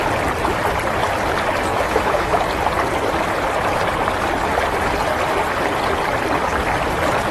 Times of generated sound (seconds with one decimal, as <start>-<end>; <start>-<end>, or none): 1.7-2.4